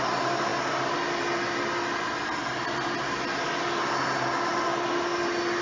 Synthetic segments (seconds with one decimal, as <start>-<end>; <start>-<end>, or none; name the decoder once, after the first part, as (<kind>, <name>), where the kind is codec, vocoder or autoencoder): none